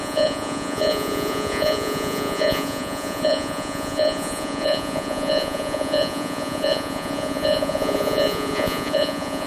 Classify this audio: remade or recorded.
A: remade